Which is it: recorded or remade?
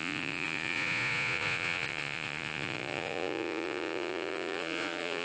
remade